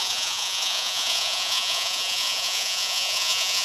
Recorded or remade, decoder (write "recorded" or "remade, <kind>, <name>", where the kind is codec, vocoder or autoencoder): remade, vocoder, Vocos